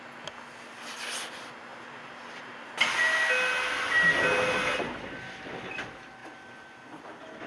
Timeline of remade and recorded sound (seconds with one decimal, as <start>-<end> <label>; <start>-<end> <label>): 0.0-7.5 recorded